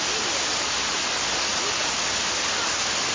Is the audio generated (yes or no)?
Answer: no